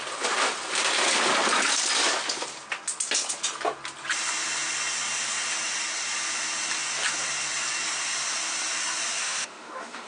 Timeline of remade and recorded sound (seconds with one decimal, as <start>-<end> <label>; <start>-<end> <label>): 0.0-9.2 recorded; 9.2-10.1 remade